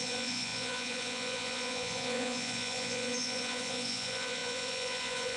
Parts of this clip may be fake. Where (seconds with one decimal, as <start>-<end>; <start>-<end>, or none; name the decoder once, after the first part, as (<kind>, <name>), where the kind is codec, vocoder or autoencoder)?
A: 0.0-5.4 (vocoder, Vocos)